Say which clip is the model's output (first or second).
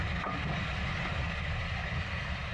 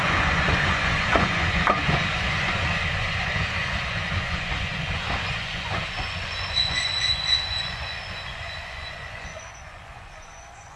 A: second